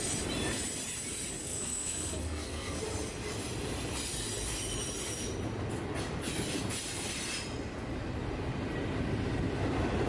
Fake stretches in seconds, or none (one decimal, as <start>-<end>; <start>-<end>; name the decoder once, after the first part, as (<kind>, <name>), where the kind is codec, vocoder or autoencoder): 1.4-2.8 (codec, SNAC)